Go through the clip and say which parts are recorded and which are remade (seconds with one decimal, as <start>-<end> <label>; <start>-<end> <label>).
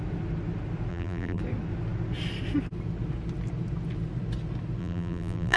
0.0-0.9 recorded; 0.9-1.4 remade; 1.4-4.8 recorded; 4.8-5.6 remade